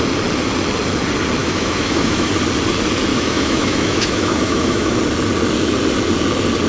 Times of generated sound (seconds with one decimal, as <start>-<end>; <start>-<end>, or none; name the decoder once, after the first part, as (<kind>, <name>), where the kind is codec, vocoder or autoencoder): 1.4-2.3 (autoencoder, DAC-VAE); 3.1-5.0

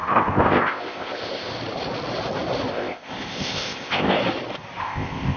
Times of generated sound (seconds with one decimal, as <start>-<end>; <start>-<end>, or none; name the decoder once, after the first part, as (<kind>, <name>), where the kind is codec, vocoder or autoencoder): 0.0-1.5 (codec, ZipCodec); 2.7-4.2; 4.8-5.4